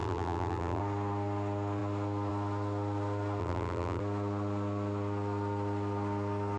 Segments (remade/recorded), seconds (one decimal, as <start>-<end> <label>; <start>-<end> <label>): 0.0-0.8 remade; 0.8-3.4 recorded; 3.4-4.0 remade; 4.0-6.6 recorded